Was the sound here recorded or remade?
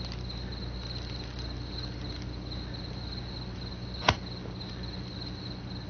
recorded